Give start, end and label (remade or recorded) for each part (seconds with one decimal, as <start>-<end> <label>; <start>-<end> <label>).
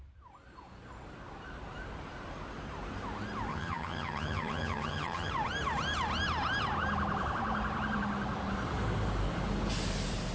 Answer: 0.0-3.5 recorded; 3.5-5.3 remade; 5.3-10.3 recorded